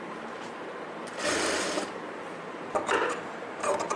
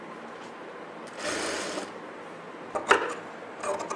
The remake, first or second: first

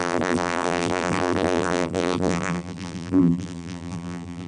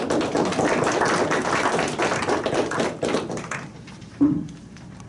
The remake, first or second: first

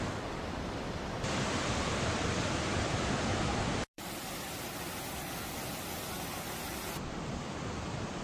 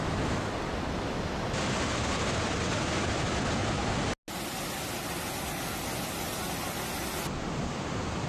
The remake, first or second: first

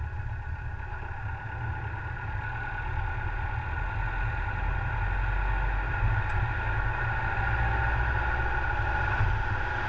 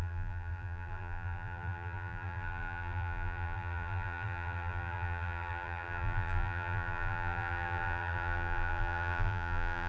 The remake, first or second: second